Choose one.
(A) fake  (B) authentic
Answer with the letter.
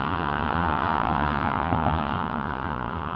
A